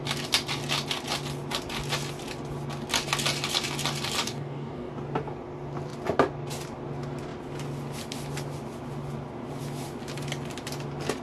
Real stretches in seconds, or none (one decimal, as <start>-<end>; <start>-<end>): 0.0-4.2; 4.9-11.2